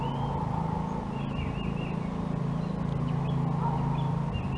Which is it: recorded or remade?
recorded